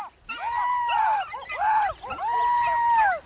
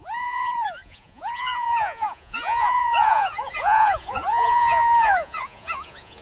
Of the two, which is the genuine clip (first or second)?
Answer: first